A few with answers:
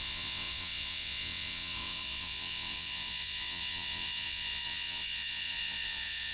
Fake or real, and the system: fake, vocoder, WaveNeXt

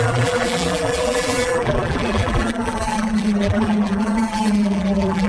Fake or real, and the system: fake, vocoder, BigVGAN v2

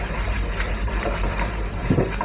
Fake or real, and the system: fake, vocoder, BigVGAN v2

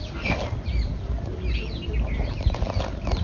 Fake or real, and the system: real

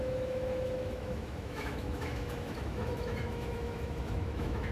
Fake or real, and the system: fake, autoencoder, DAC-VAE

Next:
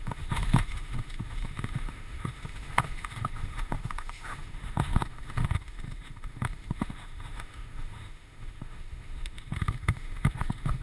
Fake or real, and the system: fake, autoencoder, DAC-VAE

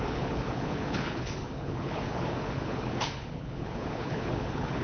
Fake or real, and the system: fake, codec, HILCodec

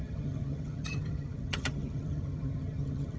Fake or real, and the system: fake, vocoder, HiFi-GAN